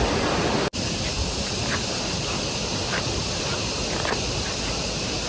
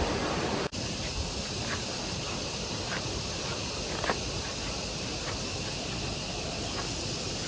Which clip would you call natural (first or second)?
first